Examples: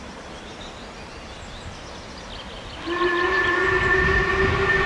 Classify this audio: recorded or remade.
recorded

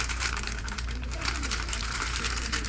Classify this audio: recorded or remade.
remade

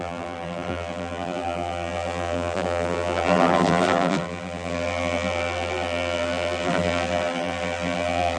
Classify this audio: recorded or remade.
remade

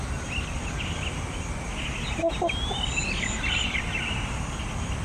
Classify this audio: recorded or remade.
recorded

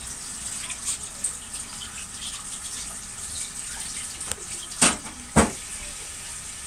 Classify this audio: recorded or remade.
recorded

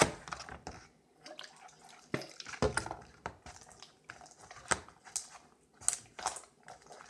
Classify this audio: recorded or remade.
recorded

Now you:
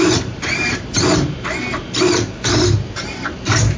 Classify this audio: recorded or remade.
remade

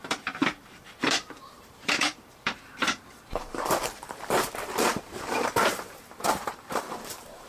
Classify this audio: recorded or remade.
remade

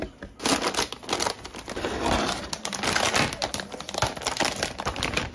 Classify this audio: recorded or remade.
recorded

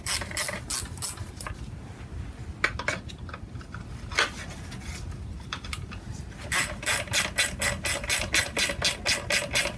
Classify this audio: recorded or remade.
recorded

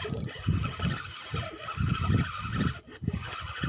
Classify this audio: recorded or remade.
recorded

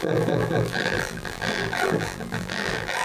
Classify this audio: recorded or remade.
remade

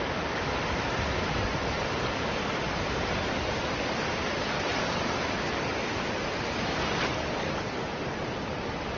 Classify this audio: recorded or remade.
recorded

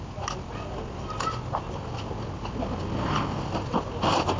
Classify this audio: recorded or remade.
recorded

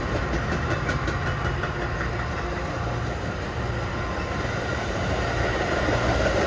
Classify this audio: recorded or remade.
recorded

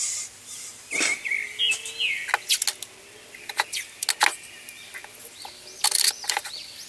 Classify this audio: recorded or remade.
recorded